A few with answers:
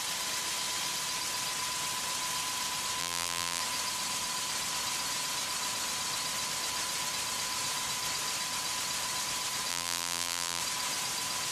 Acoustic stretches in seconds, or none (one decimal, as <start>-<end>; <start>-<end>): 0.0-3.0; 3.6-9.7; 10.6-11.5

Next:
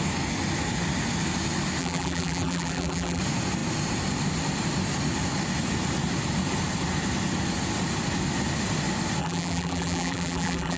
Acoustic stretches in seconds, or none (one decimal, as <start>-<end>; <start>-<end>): 0.0-1.8; 3.2-9.2

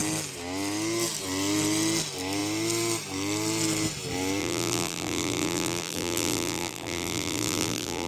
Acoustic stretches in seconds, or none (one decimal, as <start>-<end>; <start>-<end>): 0.0-4.4